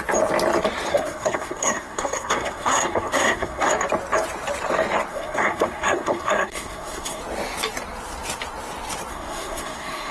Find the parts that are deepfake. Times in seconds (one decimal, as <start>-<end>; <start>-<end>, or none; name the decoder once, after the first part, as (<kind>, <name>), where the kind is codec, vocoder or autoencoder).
0.9-3.7 (codec, SNAC); 5.1-7.2; 9.1-10.1